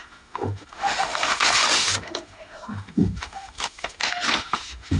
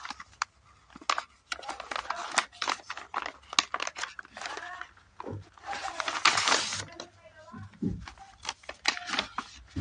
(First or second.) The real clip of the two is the second